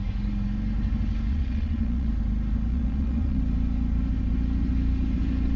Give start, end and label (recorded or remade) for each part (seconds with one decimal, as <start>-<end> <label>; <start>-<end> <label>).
0.0-1.3 recorded; 1.3-2.1 remade; 2.1-2.7 recorded; 2.7-3.4 remade; 3.4-5.6 recorded